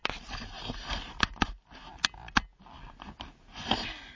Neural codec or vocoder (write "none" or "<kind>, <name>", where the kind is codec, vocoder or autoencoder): none